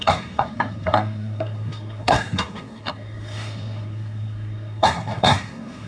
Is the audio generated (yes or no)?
yes